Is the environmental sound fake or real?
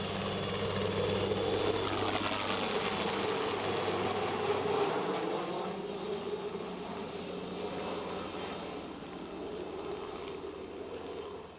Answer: real